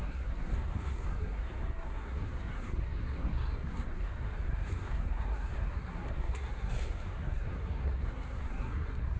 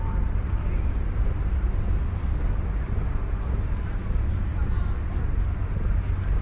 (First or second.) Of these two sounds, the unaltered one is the second